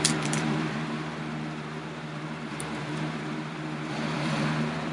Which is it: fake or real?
fake